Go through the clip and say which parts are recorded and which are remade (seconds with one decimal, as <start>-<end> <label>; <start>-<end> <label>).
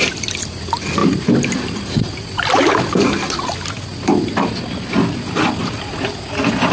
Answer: 0.0-1.0 recorded; 1.0-2.6 remade; 2.6-3.9 recorded; 3.9-6.7 remade